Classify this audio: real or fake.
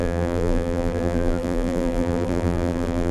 fake